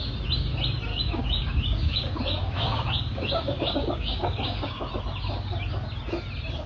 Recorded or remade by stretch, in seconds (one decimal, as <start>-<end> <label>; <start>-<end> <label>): 0.0-0.9 recorded; 0.9-4.9 remade; 4.9-6.7 recorded